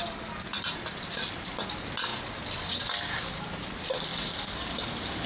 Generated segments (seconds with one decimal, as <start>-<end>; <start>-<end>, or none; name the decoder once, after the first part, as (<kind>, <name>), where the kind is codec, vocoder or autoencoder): 0.5-1.3 (vocoder, BigVGAN v2); 4.1-5.3